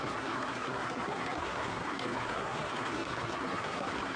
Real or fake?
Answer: fake